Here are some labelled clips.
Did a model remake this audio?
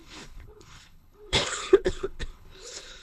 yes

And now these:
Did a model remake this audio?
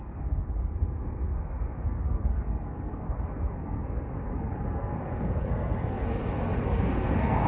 yes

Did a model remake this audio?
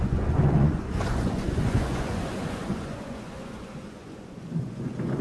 yes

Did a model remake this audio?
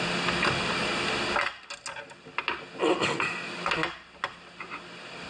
no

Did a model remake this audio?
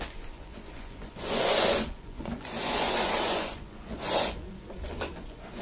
yes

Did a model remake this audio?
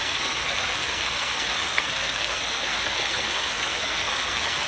yes